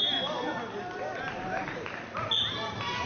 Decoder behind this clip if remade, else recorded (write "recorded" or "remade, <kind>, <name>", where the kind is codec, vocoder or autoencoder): recorded